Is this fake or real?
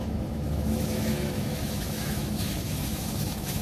fake